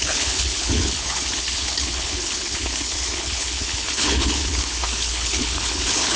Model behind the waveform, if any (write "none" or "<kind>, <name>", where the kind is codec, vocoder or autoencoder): codec, HILCodec